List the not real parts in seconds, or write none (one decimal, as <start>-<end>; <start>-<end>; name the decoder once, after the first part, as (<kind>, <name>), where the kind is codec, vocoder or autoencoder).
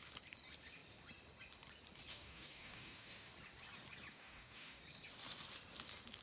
2.1-3.3 (codec, DAC); 4.1-4.8